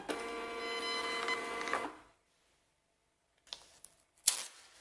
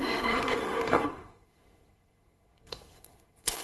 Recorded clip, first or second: first